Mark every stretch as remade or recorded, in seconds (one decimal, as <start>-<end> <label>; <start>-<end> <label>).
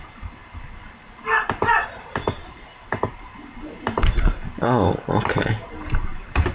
0.0-6.5 remade